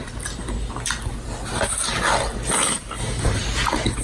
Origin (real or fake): real